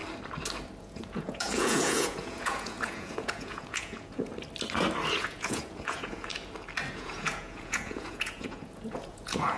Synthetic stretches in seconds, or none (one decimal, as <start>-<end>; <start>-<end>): 0.8-4.3; 5.2-6.3; 6.9-9.6